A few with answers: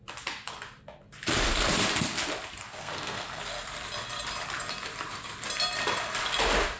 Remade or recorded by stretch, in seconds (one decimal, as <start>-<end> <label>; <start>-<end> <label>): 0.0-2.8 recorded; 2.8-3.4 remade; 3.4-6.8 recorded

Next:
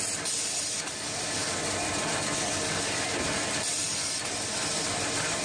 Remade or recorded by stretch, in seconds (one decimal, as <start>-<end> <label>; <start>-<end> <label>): 0.0-5.4 recorded

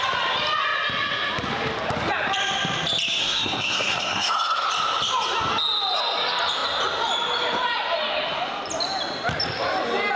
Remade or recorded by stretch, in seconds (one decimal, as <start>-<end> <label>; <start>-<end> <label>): 0.0-3.2 recorded; 3.2-4.7 remade; 4.7-10.2 recorded

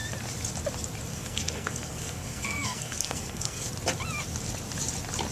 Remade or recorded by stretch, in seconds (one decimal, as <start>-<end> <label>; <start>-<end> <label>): 0.0-1.1 recorded; 1.1-3.7 remade; 3.7-5.3 recorded

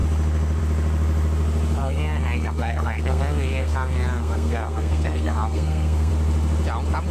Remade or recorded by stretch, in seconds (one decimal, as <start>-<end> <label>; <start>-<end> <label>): 0.0-1.8 recorded; 1.8-6.1 remade; 6.1-7.1 recorded